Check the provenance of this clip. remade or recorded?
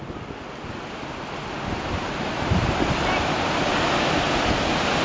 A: recorded